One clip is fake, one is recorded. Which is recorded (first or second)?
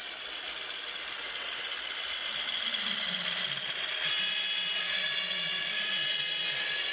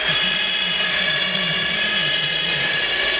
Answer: first